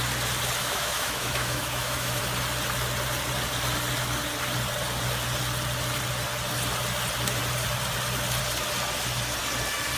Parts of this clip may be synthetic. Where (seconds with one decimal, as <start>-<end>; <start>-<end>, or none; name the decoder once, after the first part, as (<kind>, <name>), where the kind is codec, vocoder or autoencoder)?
0.6-2.2 (autoencoder, DAC-VAE)